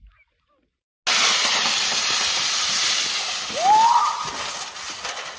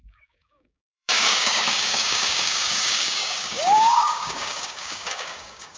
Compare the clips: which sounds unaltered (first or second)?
first